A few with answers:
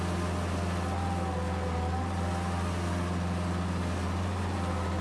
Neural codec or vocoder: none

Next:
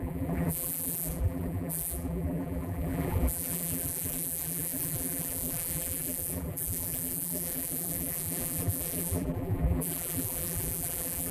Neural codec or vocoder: vocoder, BigVGAN v2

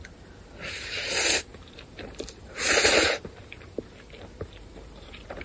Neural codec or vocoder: vocoder, BigVGAN v2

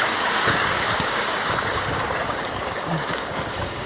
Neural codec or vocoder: codec, DAC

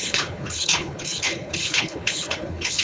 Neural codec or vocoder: codec, HILCodec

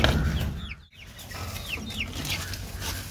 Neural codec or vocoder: none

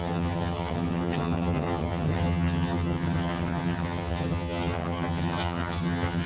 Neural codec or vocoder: vocoder, HiFi-GAN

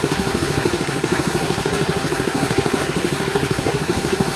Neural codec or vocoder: codec, SNAC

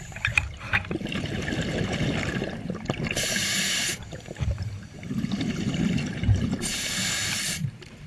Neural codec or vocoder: vocoder, BigVGAN v2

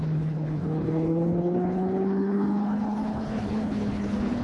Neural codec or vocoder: codec, HILCodec